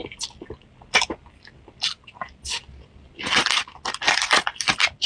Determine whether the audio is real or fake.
real